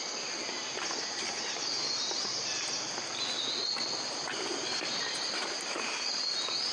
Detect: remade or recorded recorded